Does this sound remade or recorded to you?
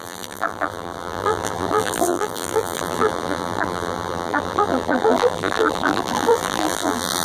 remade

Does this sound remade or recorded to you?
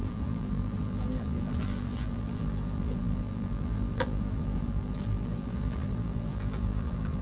remade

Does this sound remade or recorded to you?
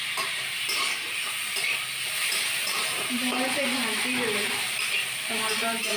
remade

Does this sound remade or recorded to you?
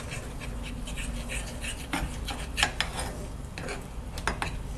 recorded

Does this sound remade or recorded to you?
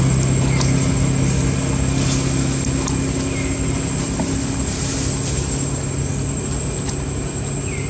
recorded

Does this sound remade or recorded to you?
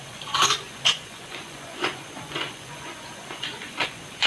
remade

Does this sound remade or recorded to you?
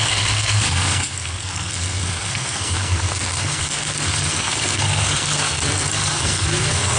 remade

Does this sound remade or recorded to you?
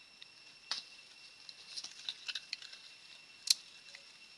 recorded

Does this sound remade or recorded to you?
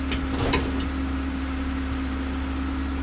recorded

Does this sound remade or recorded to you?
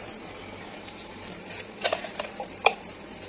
remade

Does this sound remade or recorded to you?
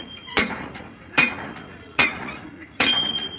remade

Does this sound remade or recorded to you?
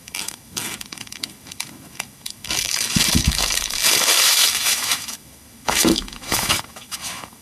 remade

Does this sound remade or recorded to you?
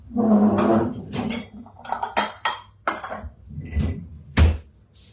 recorded